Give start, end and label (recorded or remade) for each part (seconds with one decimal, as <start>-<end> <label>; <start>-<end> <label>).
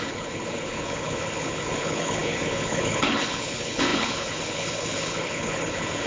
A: 0.0-6.1 remade